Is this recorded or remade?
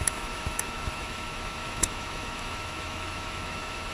remade